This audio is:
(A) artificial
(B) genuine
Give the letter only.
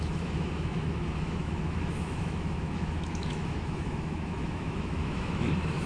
A